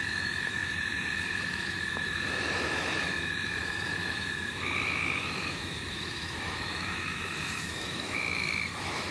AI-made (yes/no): yes